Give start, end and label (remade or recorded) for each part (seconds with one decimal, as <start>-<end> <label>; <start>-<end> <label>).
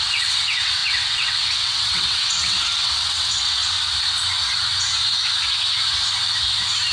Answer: 0.0-3.6 remade; 3.6-6.9 recorded